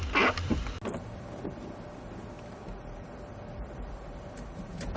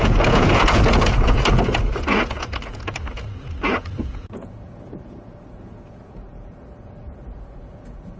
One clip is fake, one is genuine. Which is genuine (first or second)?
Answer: first